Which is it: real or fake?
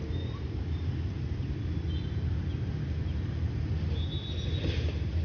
real